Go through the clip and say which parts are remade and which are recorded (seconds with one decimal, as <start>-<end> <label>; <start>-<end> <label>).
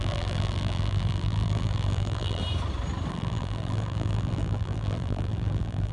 0.0-2.4 remade; 2.4-3.1 recorded; 3.1-5.9 remade